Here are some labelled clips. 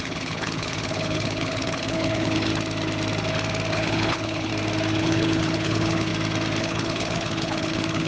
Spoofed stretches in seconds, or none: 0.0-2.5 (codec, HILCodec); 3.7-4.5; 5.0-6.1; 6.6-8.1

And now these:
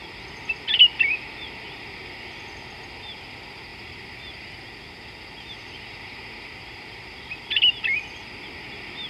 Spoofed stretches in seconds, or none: none

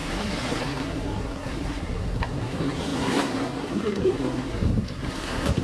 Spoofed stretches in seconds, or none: 0.0-5.6 (codec, SNAC)

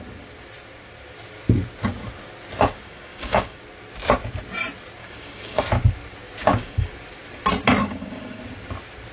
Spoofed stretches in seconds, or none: 2.8-3.6 (codec, DAC); 5.0-5.6; 6.4-6.9; 7.8-8.4

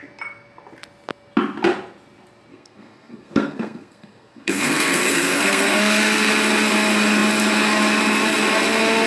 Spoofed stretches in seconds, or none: 2.5-6.3 (codec, SNAC)

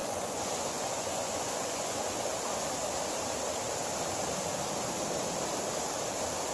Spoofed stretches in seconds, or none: 0.0-2.0 (vocoder, Vocos)

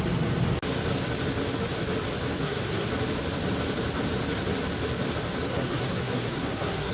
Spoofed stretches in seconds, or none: 2.4-2.9 (codec, SNAC); 5.5-6.9